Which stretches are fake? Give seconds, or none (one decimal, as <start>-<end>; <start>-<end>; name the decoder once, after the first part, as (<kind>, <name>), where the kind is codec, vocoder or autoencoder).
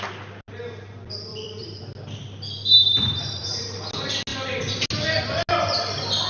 1.3-1.8 (vocoder, BigVGAN v2)